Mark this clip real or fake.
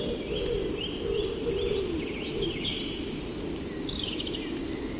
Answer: real